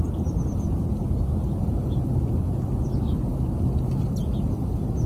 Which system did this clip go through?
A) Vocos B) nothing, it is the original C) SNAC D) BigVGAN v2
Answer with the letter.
B